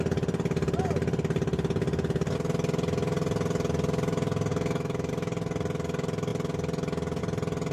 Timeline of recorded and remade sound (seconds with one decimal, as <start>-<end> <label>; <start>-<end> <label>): 0.0-4.5 recorded; 4.5-5.1 remade; 5.1-7.7 recorded